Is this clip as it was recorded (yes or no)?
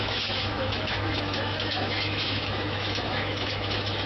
no